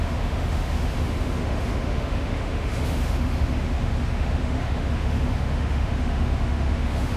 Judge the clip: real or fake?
fake